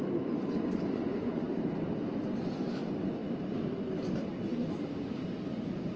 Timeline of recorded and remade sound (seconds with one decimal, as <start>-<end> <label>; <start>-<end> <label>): 0.0-0.9 recorded; 0.9-1.5 remade; 1.5-6.0 recorded